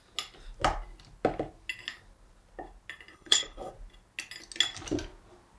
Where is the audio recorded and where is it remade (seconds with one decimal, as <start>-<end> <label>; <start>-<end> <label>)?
0.0-3.1 recorded; 3.1-3.7 remade; 3.7-5.6 recorded